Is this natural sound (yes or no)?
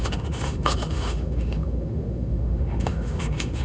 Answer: no